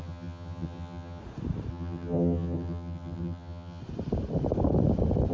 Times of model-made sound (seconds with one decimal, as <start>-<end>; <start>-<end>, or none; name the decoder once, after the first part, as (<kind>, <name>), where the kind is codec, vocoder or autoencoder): 0.0-1.2 (vocoder, HiFi-GAN); 1.7-3.8